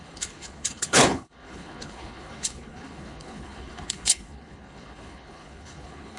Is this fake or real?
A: fake